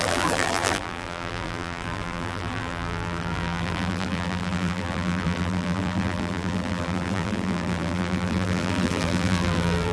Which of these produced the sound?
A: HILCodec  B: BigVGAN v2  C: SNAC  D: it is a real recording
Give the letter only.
B